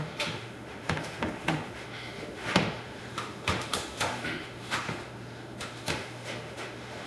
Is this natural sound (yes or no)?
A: no